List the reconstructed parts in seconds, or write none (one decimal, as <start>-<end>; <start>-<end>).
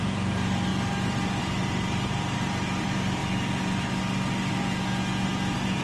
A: 0.0-0.7; 1.4-3.2